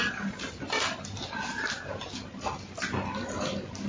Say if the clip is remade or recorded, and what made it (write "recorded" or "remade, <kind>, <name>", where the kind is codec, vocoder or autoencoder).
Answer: recorded